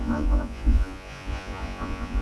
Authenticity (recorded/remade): remade